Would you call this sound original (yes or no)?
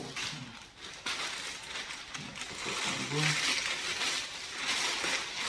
yes